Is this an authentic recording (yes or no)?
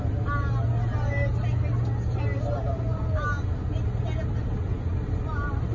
yes